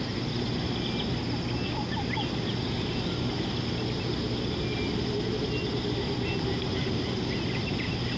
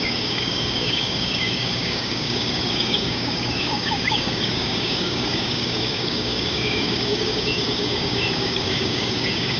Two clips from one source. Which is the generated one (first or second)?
second